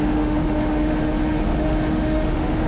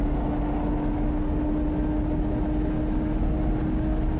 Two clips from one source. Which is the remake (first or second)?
first